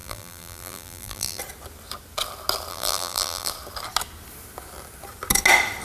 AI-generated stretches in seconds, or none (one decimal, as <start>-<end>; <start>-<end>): 0.0-1.4; 2.7-3.5